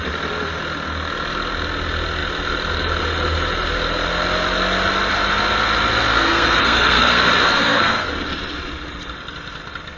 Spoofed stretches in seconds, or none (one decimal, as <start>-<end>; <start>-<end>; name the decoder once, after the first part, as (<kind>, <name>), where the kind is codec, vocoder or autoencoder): 6.1-8.1 (codec, SNAC)